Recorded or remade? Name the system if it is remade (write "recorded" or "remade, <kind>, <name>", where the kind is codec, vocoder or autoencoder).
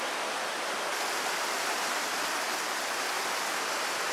recorded